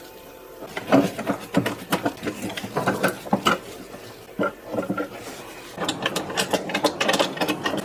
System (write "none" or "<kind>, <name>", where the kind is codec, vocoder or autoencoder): none